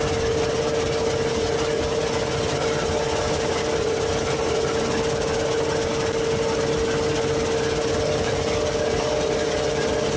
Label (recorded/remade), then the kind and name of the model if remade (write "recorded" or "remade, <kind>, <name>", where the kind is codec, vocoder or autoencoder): recorded